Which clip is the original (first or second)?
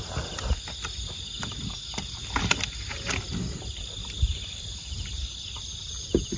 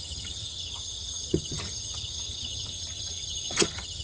first